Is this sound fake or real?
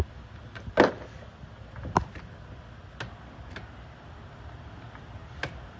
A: real